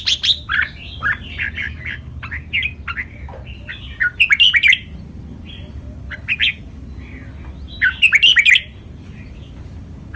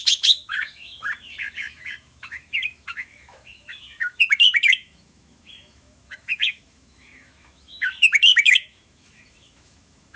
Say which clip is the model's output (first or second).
second